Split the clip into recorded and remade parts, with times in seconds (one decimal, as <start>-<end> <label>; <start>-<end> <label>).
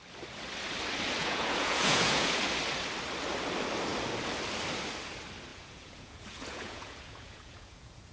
0.0-1.2 recorded; 1.2-2.4 remade; 2.4-5.5 recorded; 5.5-8.1 remade